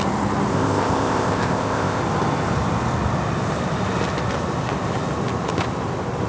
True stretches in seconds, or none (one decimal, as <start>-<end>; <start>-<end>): 0.0-0.5; 2.0-6.3